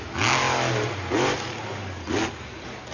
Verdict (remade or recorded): recorded